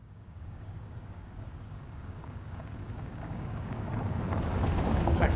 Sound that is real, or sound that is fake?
fake